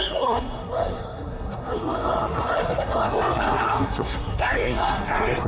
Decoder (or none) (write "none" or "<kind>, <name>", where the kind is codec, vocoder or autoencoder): codec, SNAC